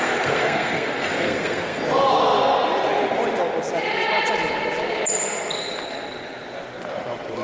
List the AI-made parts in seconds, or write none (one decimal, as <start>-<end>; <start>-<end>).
0.0-1.8